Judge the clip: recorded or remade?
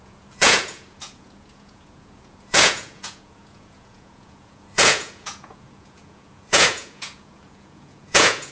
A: remade